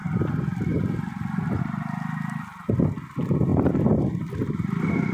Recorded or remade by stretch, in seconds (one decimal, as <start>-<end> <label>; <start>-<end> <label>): 0.0-5.1 recorded